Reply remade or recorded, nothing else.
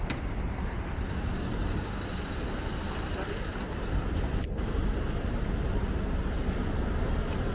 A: recorded